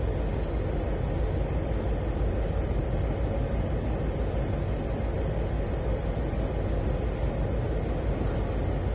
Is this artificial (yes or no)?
no